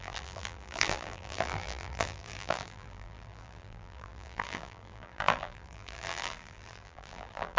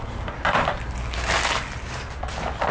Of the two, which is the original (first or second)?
second